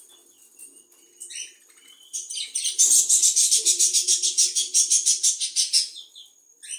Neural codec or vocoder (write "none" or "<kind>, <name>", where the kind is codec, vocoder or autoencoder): none